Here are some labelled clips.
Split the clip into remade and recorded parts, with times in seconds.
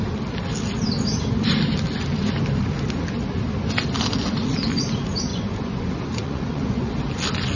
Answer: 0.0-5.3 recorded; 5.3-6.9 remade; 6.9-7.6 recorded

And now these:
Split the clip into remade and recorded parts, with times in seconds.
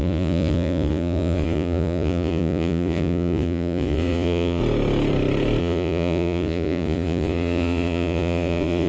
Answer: 0.0-4.6 remade; 4.6-5.6 recorded; 5.6-8.9 remade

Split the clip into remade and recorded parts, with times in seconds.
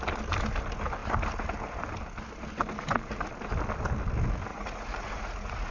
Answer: 0.0-4.5 recorded; 4.5-5.7 remade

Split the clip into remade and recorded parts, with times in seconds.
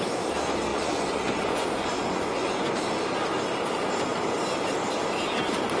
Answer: 0.0-0.7 recorded; 0.7-2.7 remade; 2.7-5.8 recorded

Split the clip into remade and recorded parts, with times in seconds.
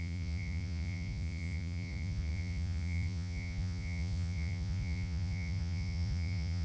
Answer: 0.0-6.6 remade